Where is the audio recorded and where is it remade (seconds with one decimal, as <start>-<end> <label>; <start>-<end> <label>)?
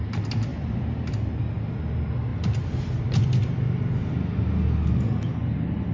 0.0-2.3 recorded; 2.3-4.0 remade; 4.0-5.9 recorded